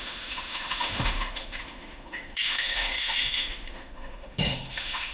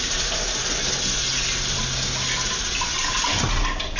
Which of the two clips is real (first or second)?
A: second